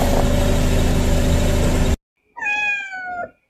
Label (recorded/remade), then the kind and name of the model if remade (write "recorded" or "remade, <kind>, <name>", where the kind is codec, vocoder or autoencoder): recorded